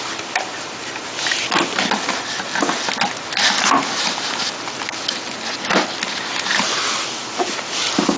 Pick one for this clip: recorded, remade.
recorded